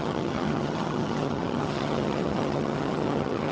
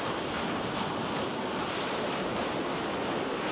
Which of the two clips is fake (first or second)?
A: first